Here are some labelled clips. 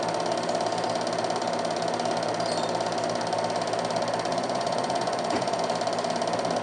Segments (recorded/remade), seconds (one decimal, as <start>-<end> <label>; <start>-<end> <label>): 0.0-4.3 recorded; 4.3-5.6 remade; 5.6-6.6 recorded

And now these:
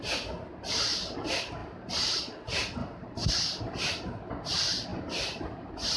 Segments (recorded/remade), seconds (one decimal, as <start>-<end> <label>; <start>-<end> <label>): 0.0-1.6 recorded; 1.6-2.2 remade; 2.2-2.8 recorded; 2.8-3.3 remade; 3.3-4.9 recorded; 4.9-6.0 remade

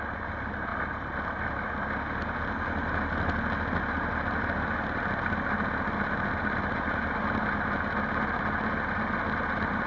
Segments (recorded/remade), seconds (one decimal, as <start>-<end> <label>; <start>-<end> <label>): 0.0-9.9 recorded

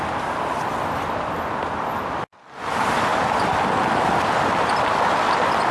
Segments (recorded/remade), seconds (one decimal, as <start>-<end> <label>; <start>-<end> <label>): 0.0-5.7 recorded